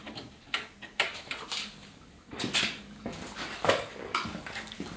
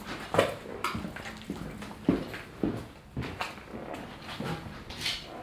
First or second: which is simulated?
first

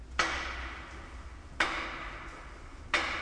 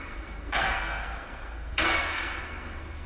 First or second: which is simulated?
second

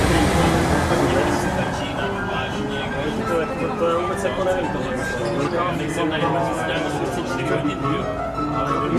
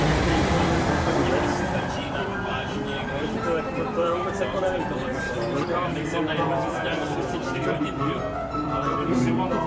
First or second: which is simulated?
second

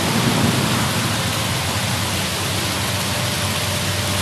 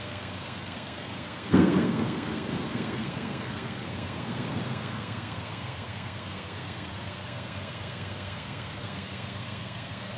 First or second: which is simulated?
second